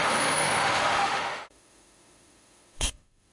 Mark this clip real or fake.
fake